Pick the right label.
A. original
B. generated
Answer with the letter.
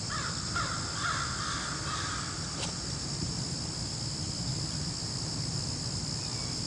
A